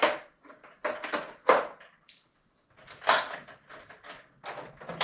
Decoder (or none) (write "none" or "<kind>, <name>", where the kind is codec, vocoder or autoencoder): none